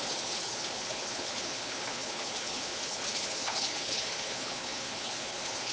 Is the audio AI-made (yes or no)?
yes